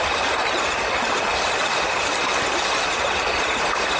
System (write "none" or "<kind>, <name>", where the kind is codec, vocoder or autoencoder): none